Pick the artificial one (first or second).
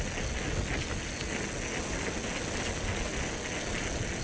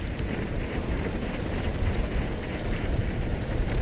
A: second